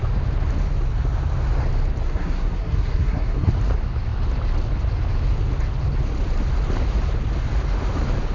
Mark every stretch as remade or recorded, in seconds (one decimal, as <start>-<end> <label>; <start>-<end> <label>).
0.0-2.0 recorded; 2.0-3.5 remade; 3.5-8.3 recorded